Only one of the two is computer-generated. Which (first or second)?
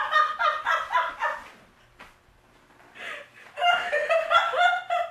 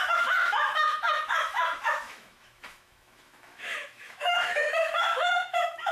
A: second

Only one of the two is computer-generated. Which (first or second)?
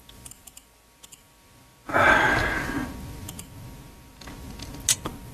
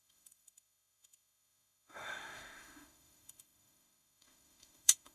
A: second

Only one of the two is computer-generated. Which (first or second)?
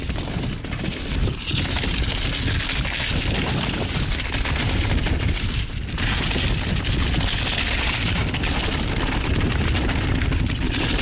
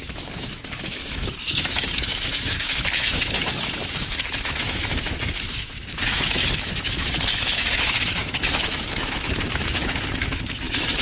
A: second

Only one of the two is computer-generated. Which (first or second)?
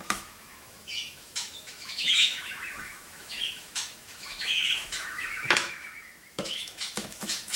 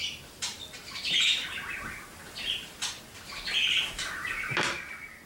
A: first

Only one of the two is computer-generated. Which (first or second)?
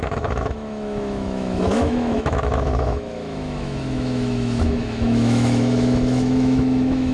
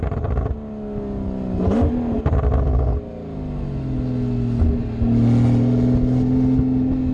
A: first